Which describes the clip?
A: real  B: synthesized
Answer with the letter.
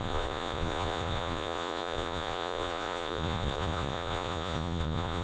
B